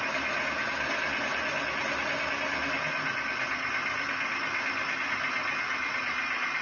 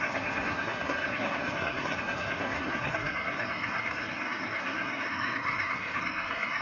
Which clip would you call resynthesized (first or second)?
second